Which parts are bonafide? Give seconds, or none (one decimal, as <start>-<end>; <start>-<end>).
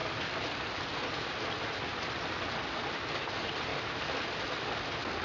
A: 0.0-5.2